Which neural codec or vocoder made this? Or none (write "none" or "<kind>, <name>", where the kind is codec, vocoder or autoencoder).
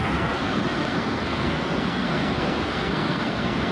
codec, SNAC